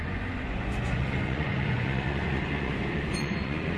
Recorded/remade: remade